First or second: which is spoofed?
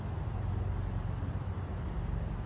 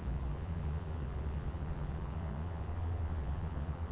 second